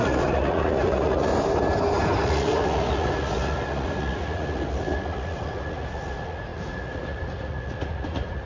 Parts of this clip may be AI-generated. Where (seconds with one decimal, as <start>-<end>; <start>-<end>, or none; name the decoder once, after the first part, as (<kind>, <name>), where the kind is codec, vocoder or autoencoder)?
0.0-1.3 (vocoder, Vocos); 2.2-8.5